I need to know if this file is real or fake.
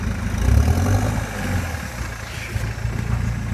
real